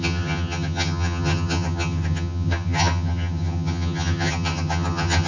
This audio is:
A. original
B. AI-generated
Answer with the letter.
B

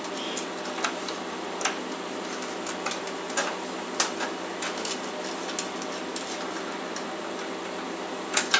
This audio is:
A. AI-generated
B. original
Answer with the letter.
B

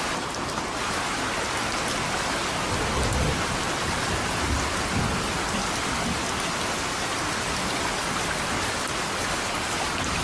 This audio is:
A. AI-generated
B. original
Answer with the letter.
B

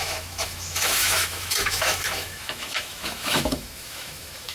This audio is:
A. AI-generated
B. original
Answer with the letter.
A